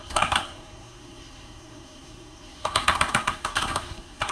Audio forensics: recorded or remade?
remade